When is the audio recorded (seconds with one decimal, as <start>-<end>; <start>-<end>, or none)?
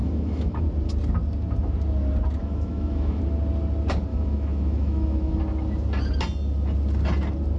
0.6-2.4; 3.2-4.1; 5.4-7.6